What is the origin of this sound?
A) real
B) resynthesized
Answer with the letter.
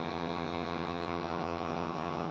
B